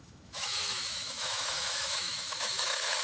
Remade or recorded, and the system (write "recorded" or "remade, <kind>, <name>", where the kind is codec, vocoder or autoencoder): remade, autoencoder, DAC-VAE